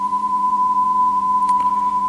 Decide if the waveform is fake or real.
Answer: fake